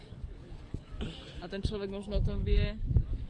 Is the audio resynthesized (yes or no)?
yes